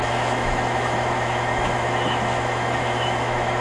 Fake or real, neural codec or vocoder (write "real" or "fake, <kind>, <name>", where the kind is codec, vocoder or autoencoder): fake, autoencoder, DAC-VAE